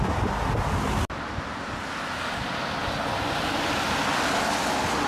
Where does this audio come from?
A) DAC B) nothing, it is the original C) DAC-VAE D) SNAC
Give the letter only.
B